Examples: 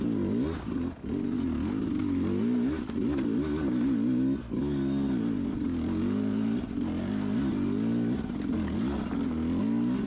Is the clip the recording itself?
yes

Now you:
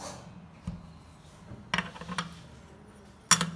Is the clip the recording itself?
yes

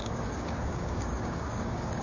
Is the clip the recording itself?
no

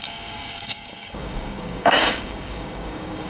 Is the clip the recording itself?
no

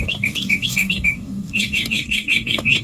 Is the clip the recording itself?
no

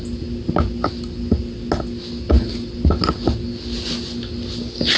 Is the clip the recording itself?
yes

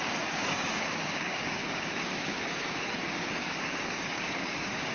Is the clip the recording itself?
no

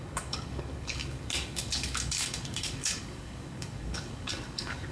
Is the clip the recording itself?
no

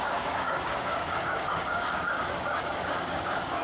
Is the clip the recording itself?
no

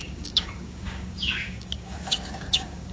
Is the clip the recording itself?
no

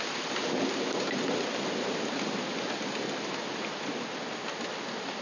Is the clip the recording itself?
yes